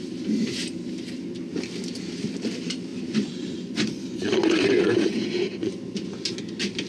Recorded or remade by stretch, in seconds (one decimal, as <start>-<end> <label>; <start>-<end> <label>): 0.0-2.9 recorded; 2.9-5.7 remade; 5.7-6.9 recorded